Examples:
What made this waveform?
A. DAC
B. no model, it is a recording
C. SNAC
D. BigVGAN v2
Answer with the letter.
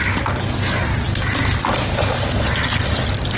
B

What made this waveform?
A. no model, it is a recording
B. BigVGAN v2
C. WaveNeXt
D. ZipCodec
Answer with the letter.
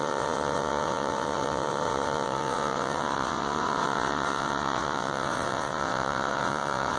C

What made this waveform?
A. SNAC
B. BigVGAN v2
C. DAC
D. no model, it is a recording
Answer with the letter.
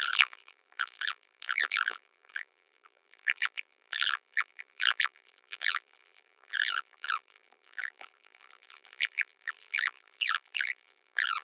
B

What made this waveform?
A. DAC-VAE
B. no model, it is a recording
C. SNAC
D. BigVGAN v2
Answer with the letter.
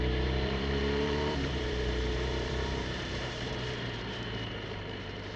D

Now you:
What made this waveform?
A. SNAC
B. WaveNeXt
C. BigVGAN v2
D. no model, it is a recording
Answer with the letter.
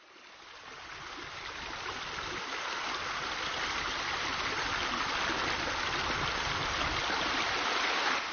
D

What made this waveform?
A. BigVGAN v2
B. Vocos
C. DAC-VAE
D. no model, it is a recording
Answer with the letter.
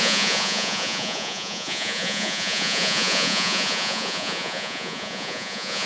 B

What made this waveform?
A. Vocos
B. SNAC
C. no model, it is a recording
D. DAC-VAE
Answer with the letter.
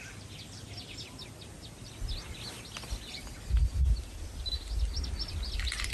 C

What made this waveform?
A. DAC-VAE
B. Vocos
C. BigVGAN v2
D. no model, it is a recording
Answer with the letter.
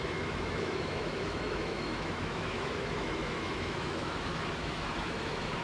A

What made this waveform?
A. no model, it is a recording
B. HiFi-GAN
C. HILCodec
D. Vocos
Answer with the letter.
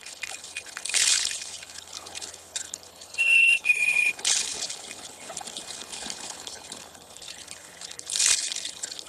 C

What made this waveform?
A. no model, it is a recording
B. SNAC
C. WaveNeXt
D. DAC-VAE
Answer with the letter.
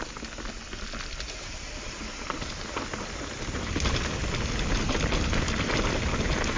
A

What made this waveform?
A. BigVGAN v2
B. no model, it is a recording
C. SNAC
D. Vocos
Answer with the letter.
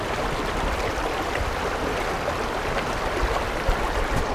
B